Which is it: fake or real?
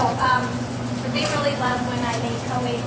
fake